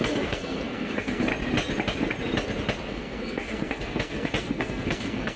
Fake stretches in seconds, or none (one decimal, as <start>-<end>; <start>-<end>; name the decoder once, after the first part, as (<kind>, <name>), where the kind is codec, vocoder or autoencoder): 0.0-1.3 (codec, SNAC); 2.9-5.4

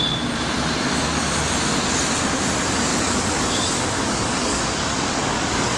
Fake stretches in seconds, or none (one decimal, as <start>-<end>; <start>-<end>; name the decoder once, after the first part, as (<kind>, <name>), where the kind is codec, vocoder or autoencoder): 2.9-5.8 (codec, DAC)

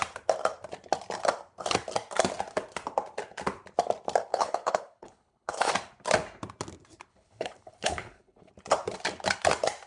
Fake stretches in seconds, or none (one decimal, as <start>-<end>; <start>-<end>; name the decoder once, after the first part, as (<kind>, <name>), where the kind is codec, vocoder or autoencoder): 4.3-5.7 (codec, HILCodec); 7.1-8.5